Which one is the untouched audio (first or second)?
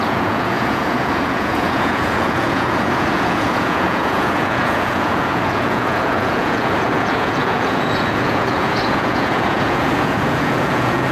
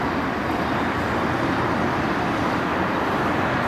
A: second